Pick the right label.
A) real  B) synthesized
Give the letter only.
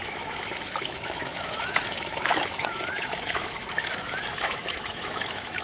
B